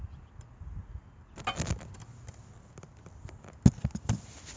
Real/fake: real